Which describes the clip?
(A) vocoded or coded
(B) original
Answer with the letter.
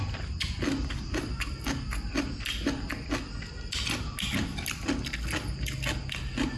B